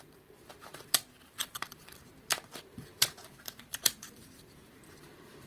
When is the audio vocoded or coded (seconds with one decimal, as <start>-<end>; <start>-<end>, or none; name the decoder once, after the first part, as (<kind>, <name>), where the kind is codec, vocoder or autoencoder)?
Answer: 0.0-5.5 (vocoder, BigVGAN v2)